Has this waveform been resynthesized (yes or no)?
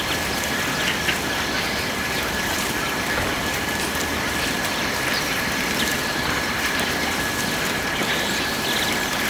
no